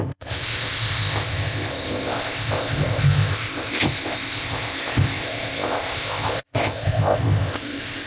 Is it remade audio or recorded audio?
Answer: remade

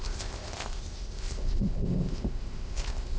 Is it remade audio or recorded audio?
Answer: remade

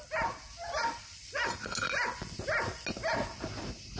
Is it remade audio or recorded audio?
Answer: recorded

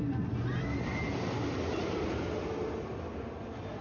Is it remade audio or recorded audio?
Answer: recorded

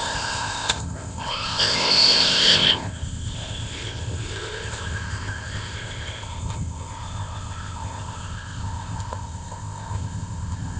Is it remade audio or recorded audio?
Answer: remade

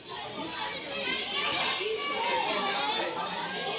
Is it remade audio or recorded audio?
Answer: recorded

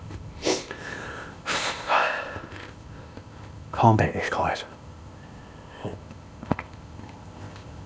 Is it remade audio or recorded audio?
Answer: remade